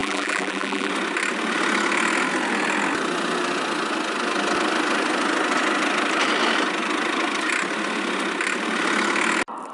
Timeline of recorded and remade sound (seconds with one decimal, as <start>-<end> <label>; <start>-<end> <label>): 0.0-0.9 remade; 0.9-9.7 recorded